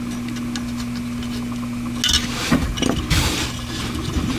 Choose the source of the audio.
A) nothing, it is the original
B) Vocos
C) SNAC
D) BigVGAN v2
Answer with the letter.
A